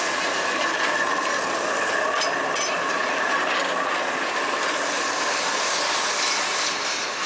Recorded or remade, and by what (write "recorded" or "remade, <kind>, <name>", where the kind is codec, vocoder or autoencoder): recorded